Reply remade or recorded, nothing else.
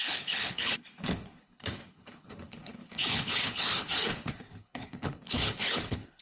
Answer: remade